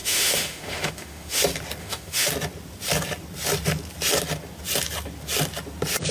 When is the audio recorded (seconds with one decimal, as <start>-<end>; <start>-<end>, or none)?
1.4-1.8; 2.3-6.1

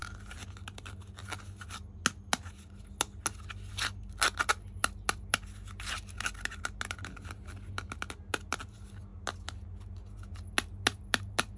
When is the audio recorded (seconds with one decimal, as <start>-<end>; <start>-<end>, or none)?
0.0-11.6

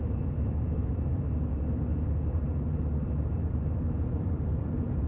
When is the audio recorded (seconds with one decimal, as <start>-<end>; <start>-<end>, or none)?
none

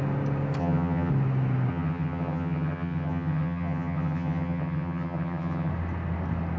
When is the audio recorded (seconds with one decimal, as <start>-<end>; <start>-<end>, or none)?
0.0-0.6; 1.1-1.7; 5.7-6.6

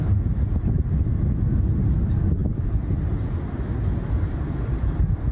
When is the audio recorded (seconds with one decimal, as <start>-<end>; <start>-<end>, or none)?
0.0-5.3

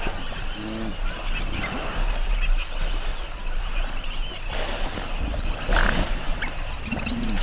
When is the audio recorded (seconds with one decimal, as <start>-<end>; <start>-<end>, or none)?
0.0-3.1; 4.1-7.4

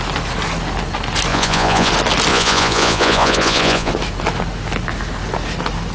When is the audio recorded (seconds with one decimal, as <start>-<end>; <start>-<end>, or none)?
0.0-1.3; 1.9-2.3; 3.9-5.9

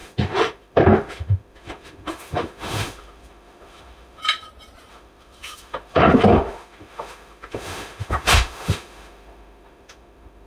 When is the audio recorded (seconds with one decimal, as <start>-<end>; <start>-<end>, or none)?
4.2-4.9